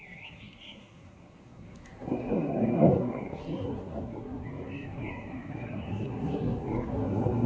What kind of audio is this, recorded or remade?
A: remade